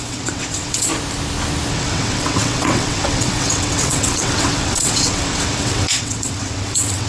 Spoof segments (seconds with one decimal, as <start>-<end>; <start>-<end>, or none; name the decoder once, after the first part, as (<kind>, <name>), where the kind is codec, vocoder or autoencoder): 0.0-0.9 (vocoder, WaveNeXt); 1.7-7.1